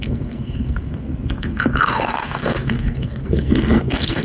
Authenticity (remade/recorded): remade